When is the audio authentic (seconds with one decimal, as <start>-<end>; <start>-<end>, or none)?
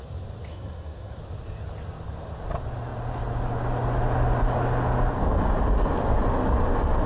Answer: 0.0-0.5; 1.2-7.1